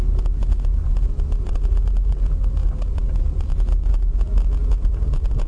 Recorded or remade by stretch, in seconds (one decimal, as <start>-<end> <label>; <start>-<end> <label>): 0.0-5.5 recorded